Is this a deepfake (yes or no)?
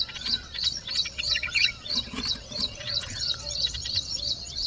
yes